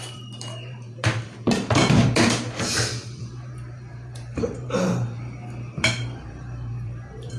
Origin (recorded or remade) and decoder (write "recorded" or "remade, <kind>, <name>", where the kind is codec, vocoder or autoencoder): remade, vocoder, BigVGAN v2